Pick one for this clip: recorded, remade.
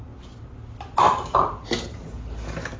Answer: recorded